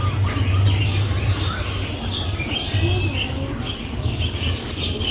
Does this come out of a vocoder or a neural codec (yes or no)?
no